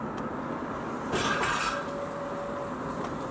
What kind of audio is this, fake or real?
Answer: real